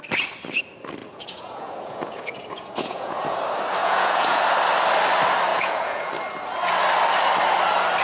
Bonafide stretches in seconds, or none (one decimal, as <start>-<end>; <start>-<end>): 0.0-1.0; 3.4-3.8; 4.4-5.5; 6.1-8.0